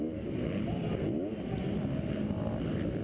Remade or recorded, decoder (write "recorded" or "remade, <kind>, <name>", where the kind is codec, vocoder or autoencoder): recorded